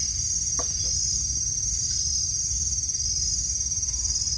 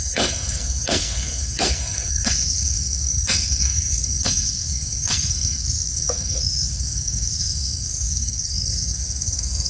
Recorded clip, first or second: first